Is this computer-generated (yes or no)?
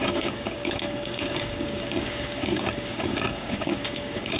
yes